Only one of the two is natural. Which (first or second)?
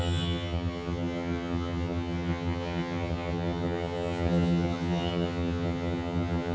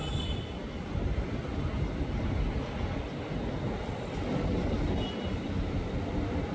second